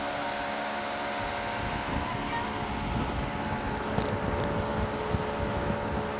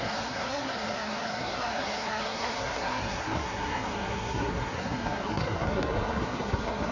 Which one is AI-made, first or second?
second